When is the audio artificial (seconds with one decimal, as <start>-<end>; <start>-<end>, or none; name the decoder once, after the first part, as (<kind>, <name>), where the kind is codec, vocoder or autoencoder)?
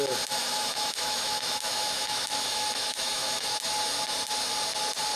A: 0.4-3.5 (autoencoder, DAC-VAE)